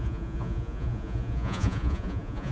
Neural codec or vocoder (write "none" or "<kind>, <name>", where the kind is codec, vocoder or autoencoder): vocoder, Vocos